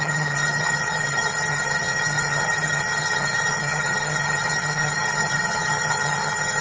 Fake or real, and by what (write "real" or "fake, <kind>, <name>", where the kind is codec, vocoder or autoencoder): fake, vocoder, HiFi-GAN